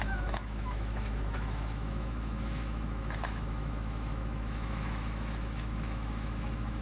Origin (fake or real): fake